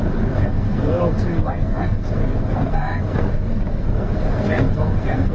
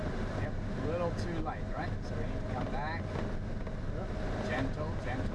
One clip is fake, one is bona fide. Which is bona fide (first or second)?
second